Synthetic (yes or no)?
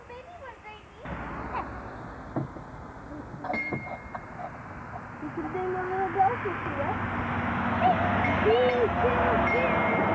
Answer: no